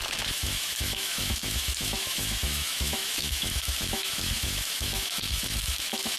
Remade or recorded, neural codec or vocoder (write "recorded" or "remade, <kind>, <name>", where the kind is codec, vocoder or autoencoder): remade, autoencoder, DAC-VAE